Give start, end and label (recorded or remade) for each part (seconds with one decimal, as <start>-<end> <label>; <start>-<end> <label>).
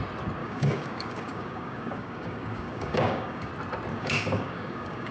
0.0-0.4 recorded; 0.4-3.5 remade; 3.5-3.9 recorded; 3.9-5.1 remade